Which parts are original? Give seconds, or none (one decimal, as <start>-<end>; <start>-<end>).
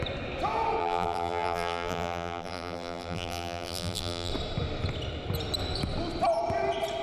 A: 0.0-0.8; 4.3-7.0